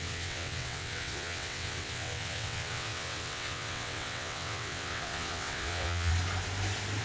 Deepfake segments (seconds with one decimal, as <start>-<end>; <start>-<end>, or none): 0.0-6.1

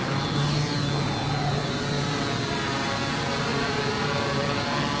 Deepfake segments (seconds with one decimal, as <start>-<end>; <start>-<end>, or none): 1.6-2.1; 3.5-4.6